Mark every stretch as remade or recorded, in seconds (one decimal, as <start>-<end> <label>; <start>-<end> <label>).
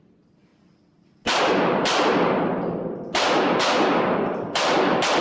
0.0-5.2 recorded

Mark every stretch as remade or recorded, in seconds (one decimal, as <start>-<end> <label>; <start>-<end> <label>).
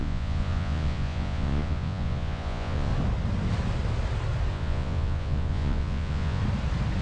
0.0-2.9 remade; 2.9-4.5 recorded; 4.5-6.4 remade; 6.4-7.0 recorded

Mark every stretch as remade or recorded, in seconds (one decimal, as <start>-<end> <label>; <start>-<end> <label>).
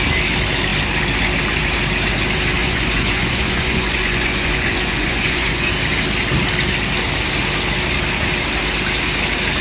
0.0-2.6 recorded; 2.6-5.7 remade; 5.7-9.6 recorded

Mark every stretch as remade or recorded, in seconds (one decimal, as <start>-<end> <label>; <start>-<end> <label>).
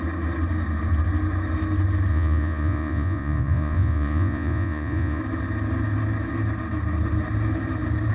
0.0-2.1 recorded; 2.1-5.2 remade; 5.2-8.1 recorded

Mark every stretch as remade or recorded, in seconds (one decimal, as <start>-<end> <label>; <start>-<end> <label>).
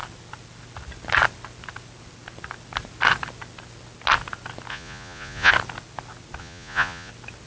0.0-4.7 recorded; 4.7-5.5 remade; 5.5-6.4 recorded; 6.4-7.1 remade; 7.1-7.5 recorded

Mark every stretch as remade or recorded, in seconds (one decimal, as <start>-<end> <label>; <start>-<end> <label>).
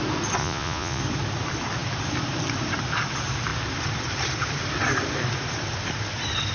0.0-0.4 recorded; 0.4-1.0 remade; 1.0-6.5 recorded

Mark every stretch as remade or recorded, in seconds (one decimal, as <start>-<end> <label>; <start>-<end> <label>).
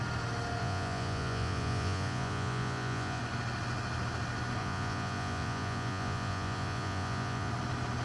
0.0-0.6 recorded; 0.6-3.2 remade; 3.2-4.6 recorded; 4.6-7.5 remade; 7.5-8.0 recorded